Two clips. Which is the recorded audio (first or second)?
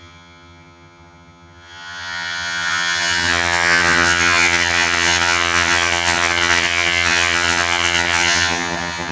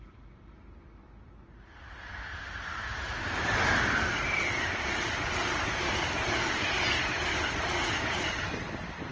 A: second